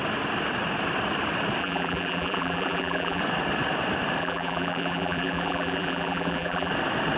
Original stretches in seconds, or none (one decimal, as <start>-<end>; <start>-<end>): 0.0-1.6; 3.2-4.2; 6.7-7.2